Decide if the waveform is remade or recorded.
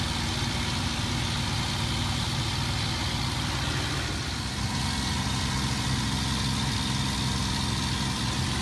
recorded